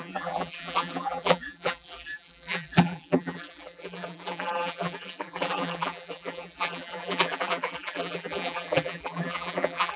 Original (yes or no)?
no